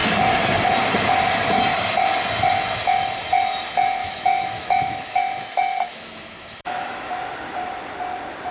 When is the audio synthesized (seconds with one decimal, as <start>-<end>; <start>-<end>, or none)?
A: 4.0-5.2; 5.9-7.1